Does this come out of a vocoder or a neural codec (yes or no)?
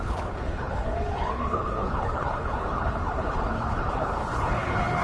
yes